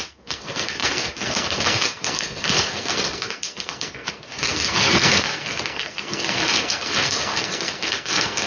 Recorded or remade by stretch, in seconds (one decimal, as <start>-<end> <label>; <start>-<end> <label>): 0.0-8.5 remade